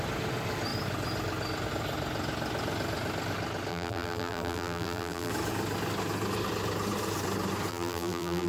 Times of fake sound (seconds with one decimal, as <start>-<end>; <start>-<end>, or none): 3.7-5.3; 7.7-8.5

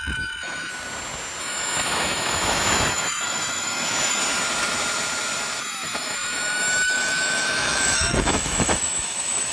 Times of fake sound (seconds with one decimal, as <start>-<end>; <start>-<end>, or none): 0.0-0.7; 1.4-4.2; 5.6-9.5

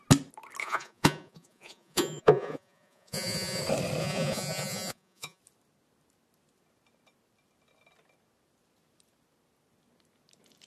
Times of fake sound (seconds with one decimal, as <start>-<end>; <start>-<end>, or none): 0.6-3.6; 4.0-5.4